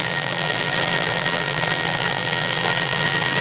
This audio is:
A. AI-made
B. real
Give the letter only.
A